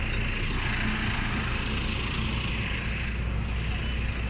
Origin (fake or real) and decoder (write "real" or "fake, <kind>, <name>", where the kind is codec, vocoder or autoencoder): real